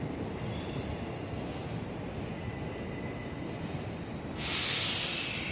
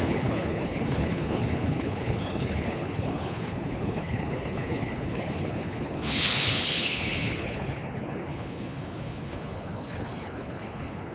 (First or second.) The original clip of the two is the first